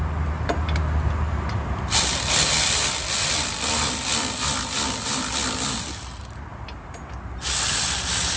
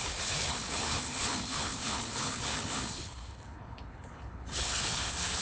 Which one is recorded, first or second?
first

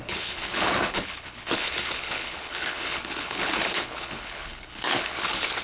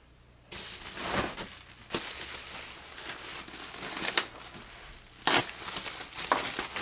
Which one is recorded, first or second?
second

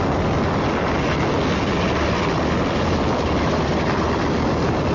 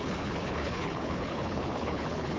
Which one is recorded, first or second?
first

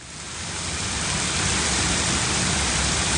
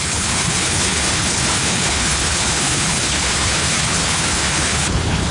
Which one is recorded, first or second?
first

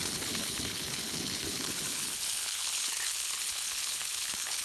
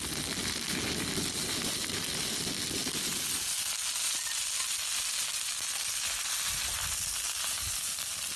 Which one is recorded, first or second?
second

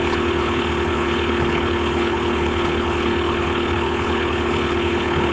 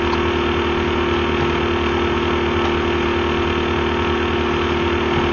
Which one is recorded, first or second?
second